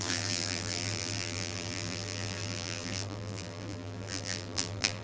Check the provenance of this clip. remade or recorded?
remade